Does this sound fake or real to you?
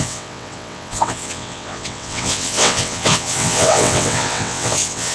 fake